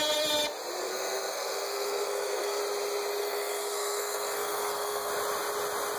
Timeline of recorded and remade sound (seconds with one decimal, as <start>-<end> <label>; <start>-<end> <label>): 0.0-0.8 recorded; 0.8-2.6 remade; 2.6-3.2 recorded; 3.2-5.1 remade; 5.1-6.0 recorded